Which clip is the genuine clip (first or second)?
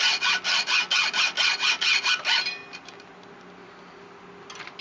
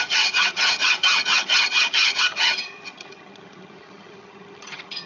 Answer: first